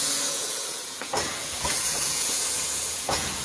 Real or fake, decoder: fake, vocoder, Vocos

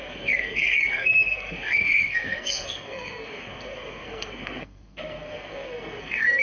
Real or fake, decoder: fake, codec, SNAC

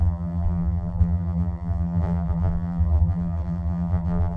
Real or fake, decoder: fake, vocoder, BigVGAN v2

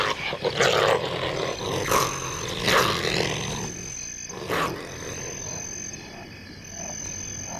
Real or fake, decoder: real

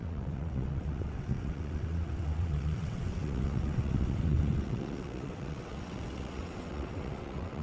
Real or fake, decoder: fake, vocoder, WaveNeXt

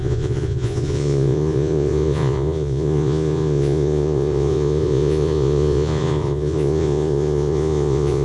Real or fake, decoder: fake, vocoder, Vocos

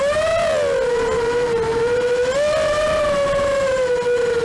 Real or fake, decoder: real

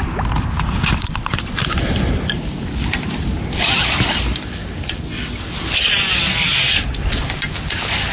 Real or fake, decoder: real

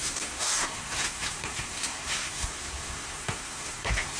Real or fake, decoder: fake, codec, SNAC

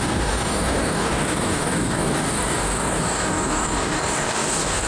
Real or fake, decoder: fake, codec, DAC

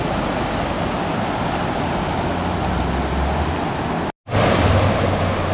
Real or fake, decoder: real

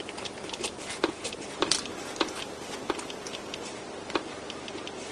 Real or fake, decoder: fake, vocoder, BigVGAN v2